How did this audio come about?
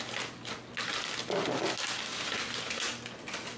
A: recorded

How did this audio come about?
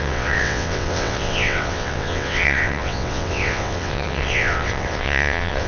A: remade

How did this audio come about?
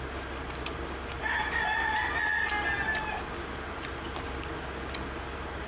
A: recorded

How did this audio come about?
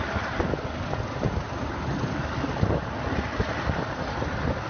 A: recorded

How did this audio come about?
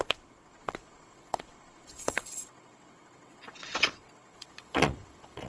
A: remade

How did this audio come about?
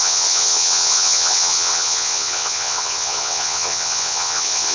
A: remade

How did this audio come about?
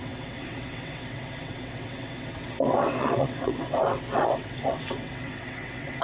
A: remade